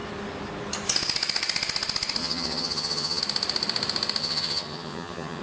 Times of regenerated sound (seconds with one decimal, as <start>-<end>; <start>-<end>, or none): 2.2-3.2; 4.2-5.4